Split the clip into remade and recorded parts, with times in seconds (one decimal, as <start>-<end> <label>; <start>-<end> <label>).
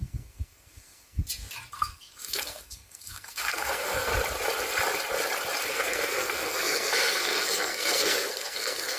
0.0-1.2 remade; 1.2-1.7 recorded; 1.7-4.1 remade; 4.1-5.7 recorded; 5.7-9.0 remade